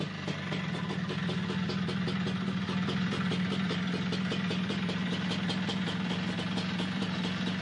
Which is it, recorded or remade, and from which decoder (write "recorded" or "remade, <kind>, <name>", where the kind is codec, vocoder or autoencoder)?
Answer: recorded